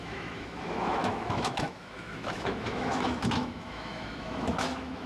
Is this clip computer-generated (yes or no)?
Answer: yes